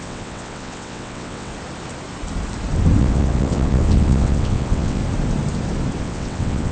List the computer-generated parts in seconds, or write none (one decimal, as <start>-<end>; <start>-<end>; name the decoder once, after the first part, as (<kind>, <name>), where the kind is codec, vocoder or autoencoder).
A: 0.0-1.5 (vocoder, WaveNeXt); 3.0-5.0; 6.0-6.7